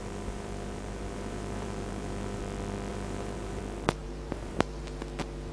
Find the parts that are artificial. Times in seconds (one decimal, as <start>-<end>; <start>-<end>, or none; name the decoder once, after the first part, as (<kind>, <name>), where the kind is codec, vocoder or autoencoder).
0.0-2.4 (vocoder, BigVGAN v2); 2.9-3.6; 4.0-4.8